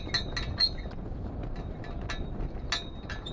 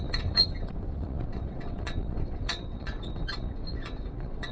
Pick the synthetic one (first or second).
second